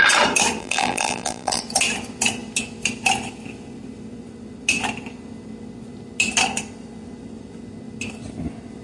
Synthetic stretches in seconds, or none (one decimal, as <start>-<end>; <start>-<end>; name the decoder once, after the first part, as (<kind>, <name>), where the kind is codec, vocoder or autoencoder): 0.6-1.6 (vocoder, BigVGAN v2)